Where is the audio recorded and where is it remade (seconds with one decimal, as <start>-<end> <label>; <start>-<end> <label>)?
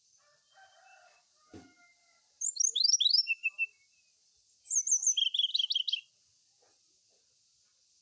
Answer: 0.0-8.0 recorded